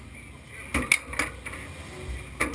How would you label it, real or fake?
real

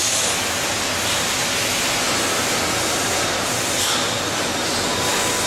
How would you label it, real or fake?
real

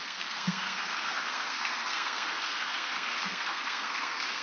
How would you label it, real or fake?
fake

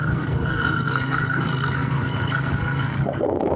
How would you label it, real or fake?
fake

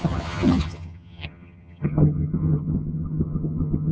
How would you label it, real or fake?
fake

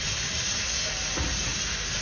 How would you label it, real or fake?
real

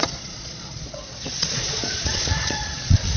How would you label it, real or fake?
fake